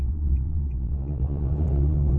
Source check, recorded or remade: remade